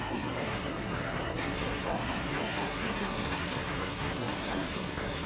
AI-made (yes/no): yes